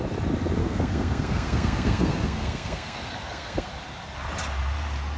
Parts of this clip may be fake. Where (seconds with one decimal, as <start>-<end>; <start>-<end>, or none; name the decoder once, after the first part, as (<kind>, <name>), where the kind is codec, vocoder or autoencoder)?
0.6-3.7 (codec, SNAC)